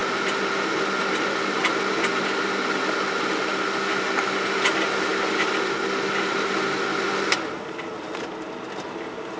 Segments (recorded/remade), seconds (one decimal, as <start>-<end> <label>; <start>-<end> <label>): 0.0-9.4 recorded